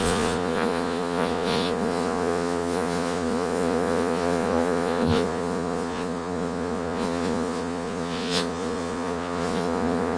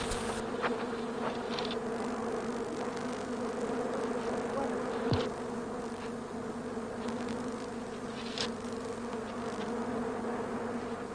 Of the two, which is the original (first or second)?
second